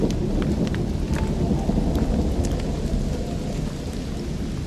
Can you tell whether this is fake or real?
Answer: real